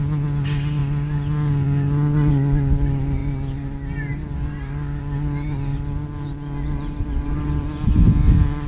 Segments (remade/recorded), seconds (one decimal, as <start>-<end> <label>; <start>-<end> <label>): 0.0-8.7 recorded